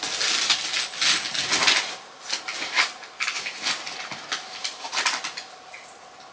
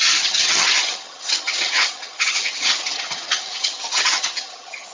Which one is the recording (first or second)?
first